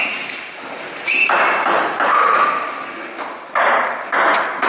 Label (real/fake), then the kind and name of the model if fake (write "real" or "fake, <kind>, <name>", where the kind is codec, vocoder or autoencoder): real